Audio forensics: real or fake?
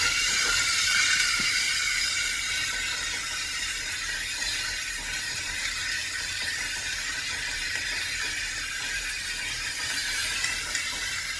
fake